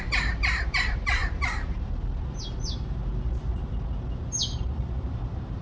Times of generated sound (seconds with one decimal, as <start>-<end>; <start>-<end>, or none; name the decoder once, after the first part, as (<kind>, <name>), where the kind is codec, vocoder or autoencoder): 0.0-1.2 (vocoder, BigVGAN v2); 4.6-5.6